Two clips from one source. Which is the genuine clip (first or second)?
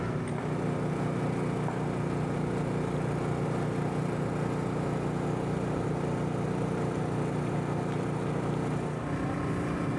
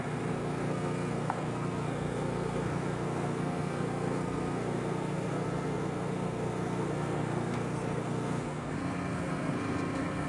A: first